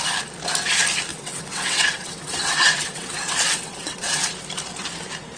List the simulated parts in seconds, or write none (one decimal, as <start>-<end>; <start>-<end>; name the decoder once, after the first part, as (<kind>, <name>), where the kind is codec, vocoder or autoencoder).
1.1-4.3 (vocoder, WaveNeXt)